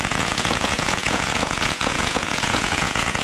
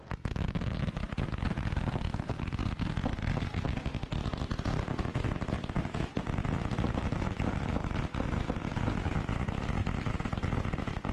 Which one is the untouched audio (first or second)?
second